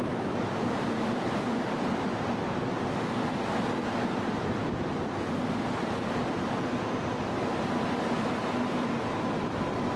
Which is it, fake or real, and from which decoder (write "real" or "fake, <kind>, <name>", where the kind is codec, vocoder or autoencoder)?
real